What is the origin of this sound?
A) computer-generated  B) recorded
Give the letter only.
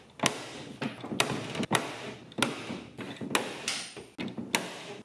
B